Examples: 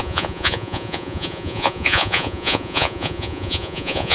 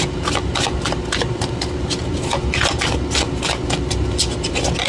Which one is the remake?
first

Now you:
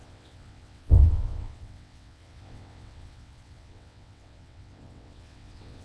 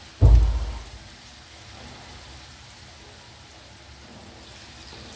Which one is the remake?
first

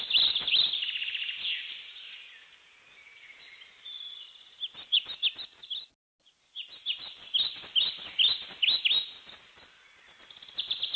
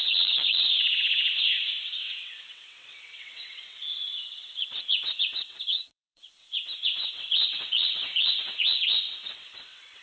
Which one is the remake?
second